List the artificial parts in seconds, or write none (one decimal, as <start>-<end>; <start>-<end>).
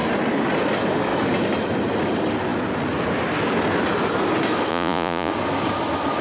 4.7-5.3